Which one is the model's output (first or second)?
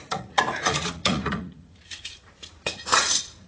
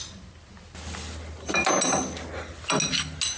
first